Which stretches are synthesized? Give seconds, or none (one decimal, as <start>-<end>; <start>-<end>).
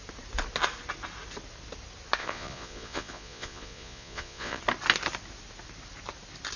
2.2-4.6